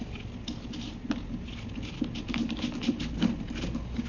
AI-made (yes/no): no